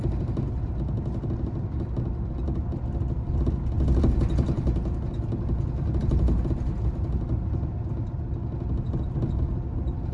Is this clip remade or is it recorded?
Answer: recorded